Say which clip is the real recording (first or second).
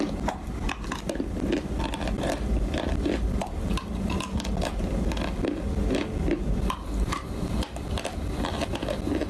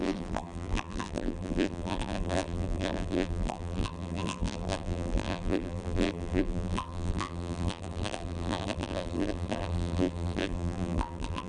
first